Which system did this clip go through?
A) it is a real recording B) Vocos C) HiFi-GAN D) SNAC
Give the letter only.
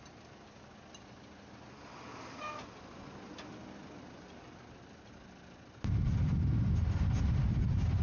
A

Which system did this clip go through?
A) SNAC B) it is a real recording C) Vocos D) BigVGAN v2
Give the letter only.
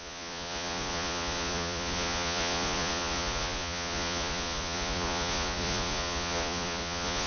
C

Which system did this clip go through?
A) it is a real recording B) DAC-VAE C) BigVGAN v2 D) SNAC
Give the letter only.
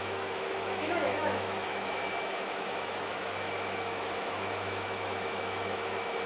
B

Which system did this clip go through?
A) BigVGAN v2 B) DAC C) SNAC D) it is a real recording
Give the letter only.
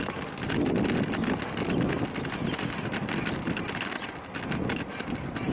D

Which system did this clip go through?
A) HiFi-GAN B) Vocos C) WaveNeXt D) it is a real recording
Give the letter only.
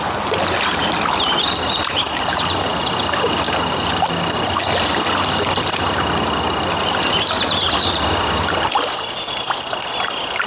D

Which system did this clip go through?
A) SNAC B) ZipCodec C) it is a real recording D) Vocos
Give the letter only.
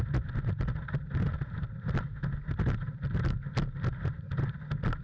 C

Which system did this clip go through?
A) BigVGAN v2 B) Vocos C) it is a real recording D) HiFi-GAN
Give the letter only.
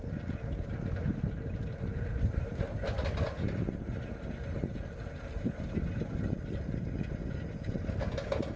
C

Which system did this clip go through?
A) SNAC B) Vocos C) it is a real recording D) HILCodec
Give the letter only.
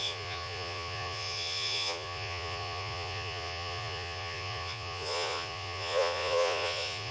B